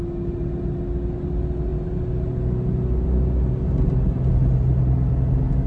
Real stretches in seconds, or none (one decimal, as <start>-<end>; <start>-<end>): 0.0-5.7